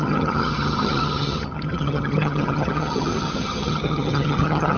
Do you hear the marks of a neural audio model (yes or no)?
yes